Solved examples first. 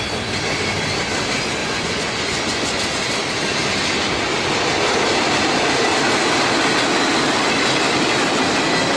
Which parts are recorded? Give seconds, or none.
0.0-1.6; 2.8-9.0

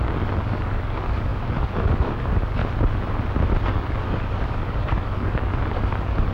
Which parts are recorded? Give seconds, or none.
2.6-3.7

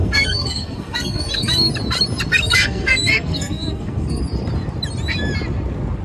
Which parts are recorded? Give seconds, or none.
1.7-2.3; 4.2-6.0

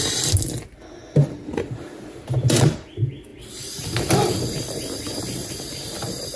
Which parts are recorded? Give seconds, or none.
0.0-6.4

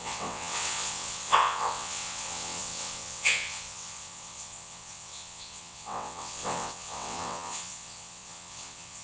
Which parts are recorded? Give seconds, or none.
none

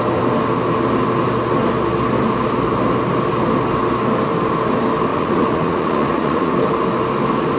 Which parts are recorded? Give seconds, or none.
0.0-5.1; 6.5-7.6